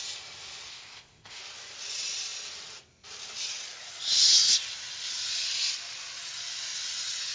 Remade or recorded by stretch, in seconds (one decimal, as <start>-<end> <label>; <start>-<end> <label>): 0.0-0.7 recorded; 0.7-1.4 remade; 1.4-7.3 recorded